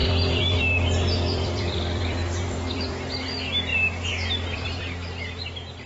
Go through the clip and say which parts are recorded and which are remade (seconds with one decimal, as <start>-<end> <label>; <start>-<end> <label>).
0.0-2.9 remade; 2.9-3.7 recorded; 3.7-4.8 remade; 4.8-5.9 recorded